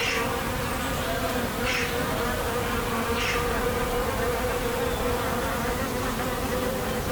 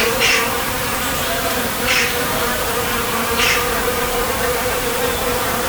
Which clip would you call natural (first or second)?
first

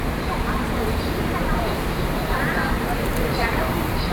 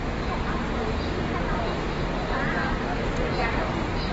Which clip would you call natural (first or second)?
second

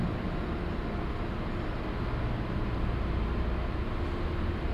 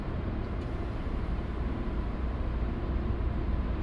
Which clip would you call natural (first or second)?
first